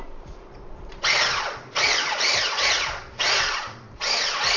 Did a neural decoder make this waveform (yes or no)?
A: yes